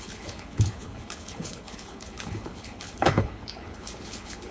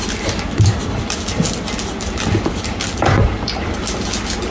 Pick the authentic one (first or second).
second